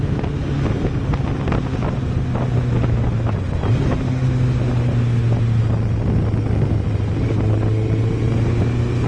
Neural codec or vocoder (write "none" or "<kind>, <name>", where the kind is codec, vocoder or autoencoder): none